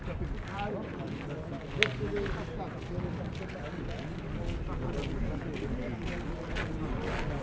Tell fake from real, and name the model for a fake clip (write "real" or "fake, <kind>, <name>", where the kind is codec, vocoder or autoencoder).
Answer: real